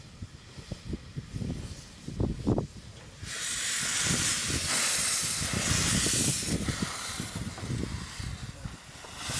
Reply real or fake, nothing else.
real